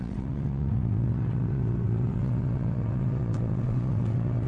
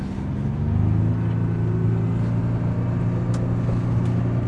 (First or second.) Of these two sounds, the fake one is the first